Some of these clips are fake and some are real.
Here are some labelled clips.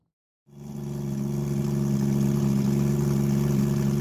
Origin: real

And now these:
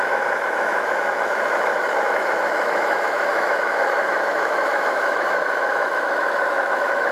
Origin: fake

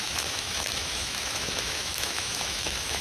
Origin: fake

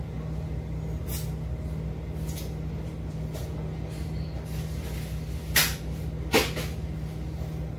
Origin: real